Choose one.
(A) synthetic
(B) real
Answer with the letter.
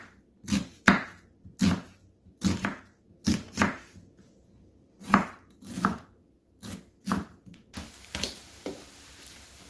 B